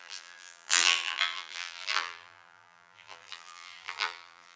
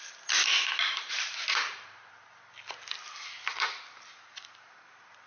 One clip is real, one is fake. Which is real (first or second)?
second